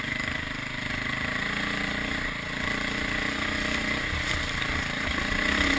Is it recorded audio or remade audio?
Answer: recorded